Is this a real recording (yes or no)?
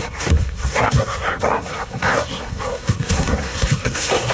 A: no